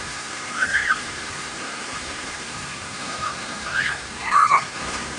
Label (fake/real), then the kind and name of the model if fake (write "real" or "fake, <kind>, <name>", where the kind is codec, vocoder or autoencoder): fake, codec, SNAC